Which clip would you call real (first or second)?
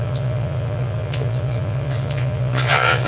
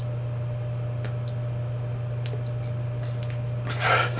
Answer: second